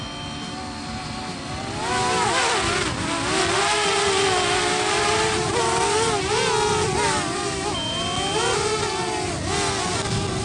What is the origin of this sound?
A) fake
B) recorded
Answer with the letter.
B